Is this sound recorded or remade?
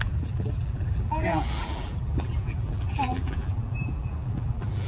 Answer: remade